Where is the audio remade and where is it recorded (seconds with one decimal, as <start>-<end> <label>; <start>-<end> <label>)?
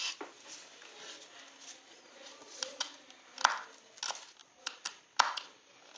0.0-1.9 recorded; 1.9-2.8 remade; 2.8-6.0 recorded